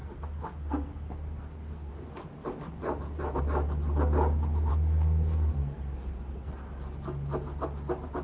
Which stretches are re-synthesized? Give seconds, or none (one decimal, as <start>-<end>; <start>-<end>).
0.0-1.9; 4.7-6.5